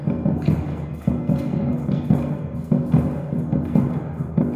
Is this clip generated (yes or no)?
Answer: yes